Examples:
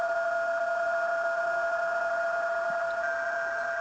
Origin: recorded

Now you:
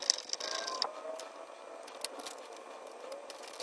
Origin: recorded